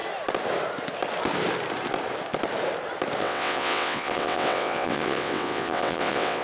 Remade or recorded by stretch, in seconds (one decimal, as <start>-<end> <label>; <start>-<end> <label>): 0.0-3.2 recorded; 3.2-6.4 remade